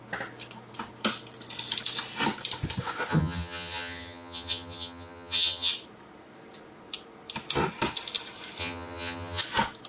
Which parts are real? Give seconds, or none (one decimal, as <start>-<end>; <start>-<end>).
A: 0.0-3.1; 5.7-8.6; 9.4-9.9